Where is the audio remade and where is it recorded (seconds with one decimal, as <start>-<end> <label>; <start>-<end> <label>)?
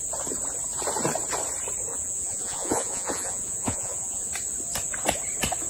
0.0-1.9 recorded; 1.9-4.3 remade; 4.3-5.7 recorded